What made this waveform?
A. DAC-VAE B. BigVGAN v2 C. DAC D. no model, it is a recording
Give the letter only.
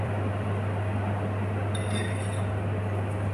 B